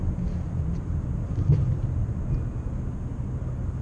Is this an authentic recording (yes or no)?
yes